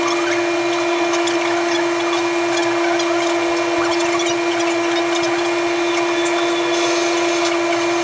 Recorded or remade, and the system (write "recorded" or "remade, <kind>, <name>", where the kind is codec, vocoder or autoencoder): recorded